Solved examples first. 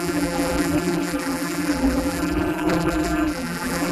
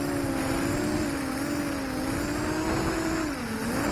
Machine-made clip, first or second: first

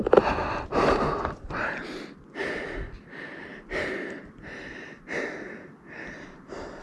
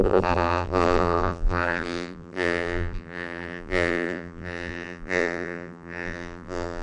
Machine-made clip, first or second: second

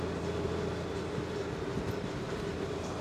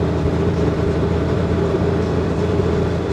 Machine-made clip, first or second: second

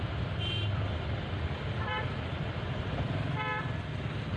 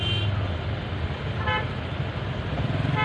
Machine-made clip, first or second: first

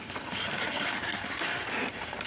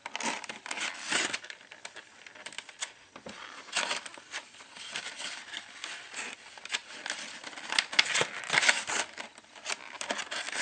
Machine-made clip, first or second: first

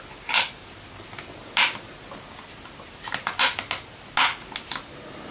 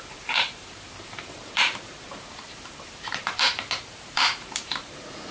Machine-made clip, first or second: second